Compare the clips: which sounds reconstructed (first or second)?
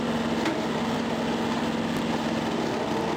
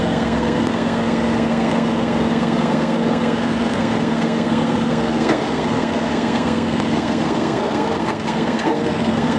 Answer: second